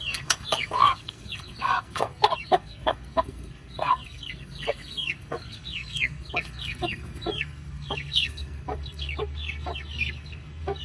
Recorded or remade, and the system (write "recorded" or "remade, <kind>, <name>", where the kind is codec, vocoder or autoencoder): remade, codec, SNAC